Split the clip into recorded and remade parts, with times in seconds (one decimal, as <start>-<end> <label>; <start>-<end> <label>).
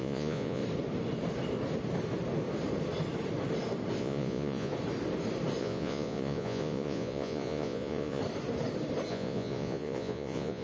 0.0-0.6 remade; 0.6-4.0 recorded; 4.0-4.7 remade; 4.7-5.6 recorded; 5.6-8.2 remade; 8.2-9.1 recorded; 9.1-10.6 remade